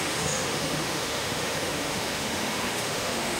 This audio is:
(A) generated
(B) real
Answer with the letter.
A